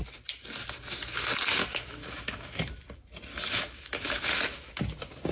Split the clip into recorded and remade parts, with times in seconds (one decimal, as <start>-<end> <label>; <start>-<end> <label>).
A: 0.0-1.6 recorded; 1.6-2.7 remade; 2.7-3.3 recorded; 3.3-4.7 remade; 4.7-5.3 recorded